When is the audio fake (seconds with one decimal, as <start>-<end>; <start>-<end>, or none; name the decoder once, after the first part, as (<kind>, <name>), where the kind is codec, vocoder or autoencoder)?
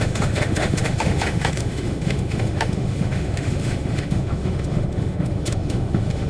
0.0-6.3 (autoencoder, DAC-VAE)